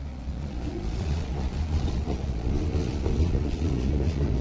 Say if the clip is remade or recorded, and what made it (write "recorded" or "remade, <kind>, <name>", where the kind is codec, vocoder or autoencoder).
remade, vocoder, Vocos